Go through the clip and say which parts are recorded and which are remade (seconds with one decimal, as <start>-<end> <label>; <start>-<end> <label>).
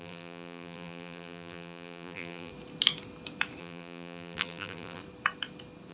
0.0-2.5 remade; 2.5-3.6 recorded; 3.6-5.0 remade; 5.0-5.9 recorded